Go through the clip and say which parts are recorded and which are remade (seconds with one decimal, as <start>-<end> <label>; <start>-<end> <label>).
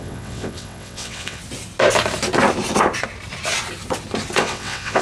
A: 0.0-1.4 remade; 1.4-4.4 recorded; 4.4-5.0 remade